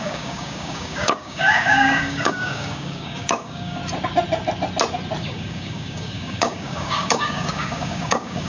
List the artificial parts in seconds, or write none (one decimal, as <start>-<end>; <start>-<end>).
0.0-3.8; 5.2-8.5